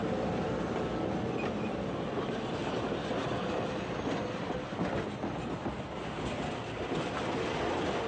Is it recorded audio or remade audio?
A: recorded